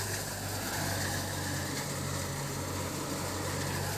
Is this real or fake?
real